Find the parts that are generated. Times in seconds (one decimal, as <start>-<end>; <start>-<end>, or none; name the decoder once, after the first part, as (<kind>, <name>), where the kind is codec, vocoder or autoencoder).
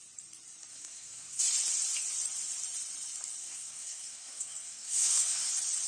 0.7-1.4 (codec, SNAC); 3.4-5.5